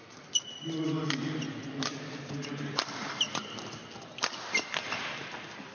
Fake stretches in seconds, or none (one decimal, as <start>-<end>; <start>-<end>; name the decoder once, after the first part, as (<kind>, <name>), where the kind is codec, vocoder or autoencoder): none

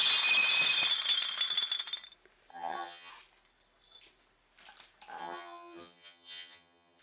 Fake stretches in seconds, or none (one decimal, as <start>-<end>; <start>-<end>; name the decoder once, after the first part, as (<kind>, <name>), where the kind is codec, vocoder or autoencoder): 2.5-3.1 (vocoder, HiFi-GAN); 5.2-7.0

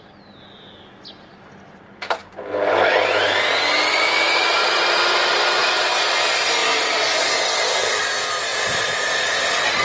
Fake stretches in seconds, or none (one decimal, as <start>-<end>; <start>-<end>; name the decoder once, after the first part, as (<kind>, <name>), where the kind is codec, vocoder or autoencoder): 5.6-6.1 (vocoder, BigVGAN v2); 6.6-8.0; 8.5-9.8

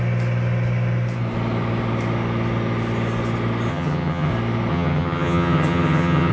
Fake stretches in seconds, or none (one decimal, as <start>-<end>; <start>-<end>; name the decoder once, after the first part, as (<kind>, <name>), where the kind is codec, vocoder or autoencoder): 3.7-4.3 (vocoder, HiFi-GAN); 4.7-6.3

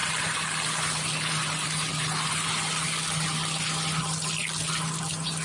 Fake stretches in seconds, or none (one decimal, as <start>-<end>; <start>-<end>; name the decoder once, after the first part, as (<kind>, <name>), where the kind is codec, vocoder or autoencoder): none